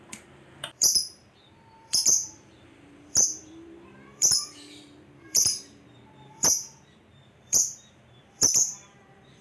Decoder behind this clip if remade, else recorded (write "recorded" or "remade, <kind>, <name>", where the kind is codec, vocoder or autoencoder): remade, vocoder, BigVGAN v2